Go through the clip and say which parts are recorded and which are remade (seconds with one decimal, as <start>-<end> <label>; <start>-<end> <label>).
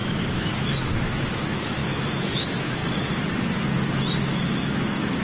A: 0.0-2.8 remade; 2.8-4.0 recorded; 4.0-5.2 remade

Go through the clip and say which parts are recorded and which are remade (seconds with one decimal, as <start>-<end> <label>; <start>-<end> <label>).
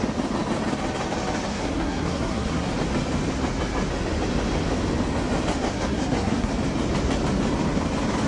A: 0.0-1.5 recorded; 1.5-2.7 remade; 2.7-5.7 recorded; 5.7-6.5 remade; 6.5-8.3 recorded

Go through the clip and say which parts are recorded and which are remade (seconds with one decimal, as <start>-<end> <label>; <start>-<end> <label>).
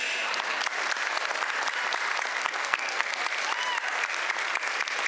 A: 0.0-2.3 recorded; 2.3-3.2 remade; 3.2-5.1 recorded